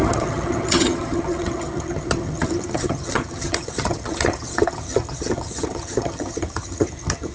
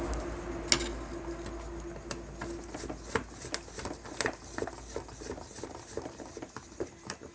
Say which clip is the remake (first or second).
first